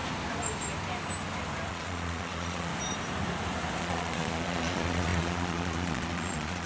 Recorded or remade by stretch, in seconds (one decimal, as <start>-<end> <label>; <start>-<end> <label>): 0.0-1.7 recorded; 1.7-2.7 remade; 2.7-3.8 recorded; 3.8-6.7 remade